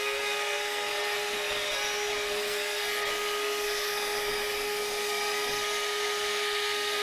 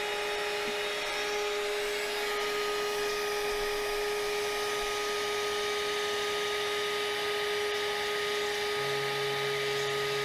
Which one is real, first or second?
second